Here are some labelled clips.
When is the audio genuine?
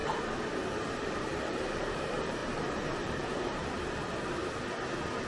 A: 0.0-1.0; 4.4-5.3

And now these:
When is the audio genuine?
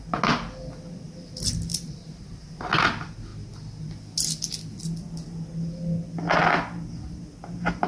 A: 0.0-1.7; 2.7-7.9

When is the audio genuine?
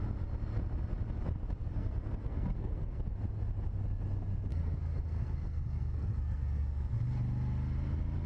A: 0.0-1.7; 3.0-4.5; 7.0-8.3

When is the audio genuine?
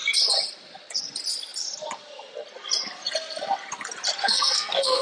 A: 0.0-4.2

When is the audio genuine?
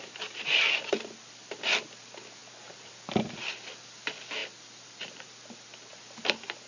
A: 0.0-6.7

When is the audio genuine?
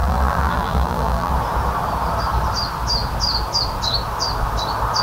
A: 1.3-5.0